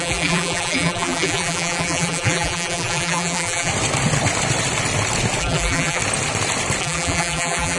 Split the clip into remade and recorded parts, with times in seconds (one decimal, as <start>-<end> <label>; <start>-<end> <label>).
0.0-3.7 remade; 3.7-5.4 recorded; 5.4-6.0 remade; 6.0-6.8 recorded; 6.8-7.8 remade